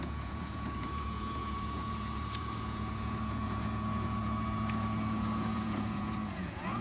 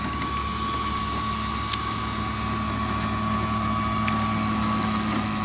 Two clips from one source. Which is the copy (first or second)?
first